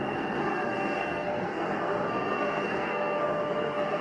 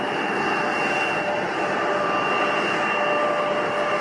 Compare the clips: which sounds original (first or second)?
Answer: second